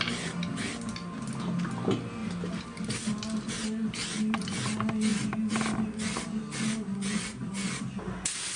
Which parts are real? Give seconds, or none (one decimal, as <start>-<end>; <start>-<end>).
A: 0.0-8.6